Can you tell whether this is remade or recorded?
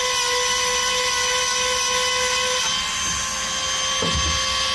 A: recorded